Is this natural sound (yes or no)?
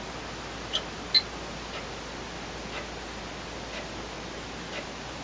yes